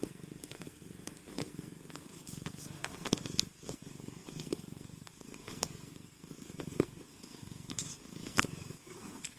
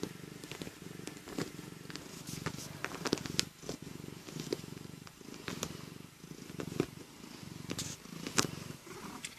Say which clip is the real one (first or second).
second